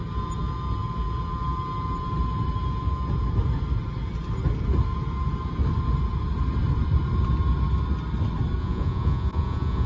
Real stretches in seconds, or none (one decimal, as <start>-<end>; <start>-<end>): 0.0-8.6